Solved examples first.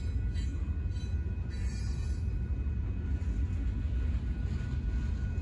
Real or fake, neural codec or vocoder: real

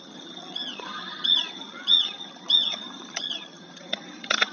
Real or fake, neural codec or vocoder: fake, vocoder, HiFi-GAN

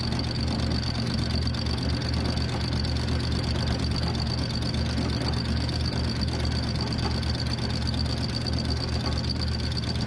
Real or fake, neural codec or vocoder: real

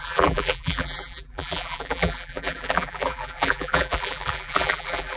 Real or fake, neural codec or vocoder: fake, vocoder, BigVGAN v2